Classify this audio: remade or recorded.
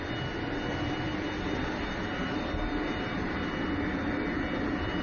recorded